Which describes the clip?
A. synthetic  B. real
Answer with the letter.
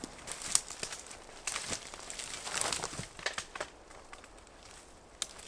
B